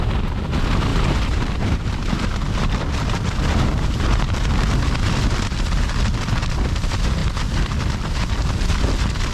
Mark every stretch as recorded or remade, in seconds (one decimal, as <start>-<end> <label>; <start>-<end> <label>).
0.0-0.9 recorded; 0.9-4.5 remade; 4.5-9.3 recorded